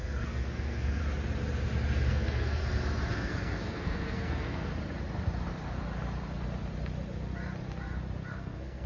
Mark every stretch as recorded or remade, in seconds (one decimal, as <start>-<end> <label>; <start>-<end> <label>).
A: 0.0-1.0 remade; 1.0-2.1 recorded; 2.1-2.6 remade; 2.6-3.1 recorded; 3.1-4.7 remade; 4.7-8.3 recorded; 8.3-8.9 remade